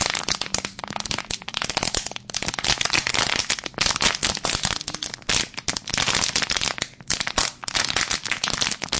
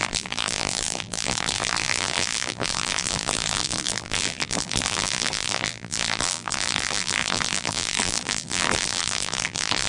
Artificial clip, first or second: second